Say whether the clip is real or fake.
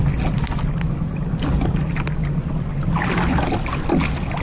real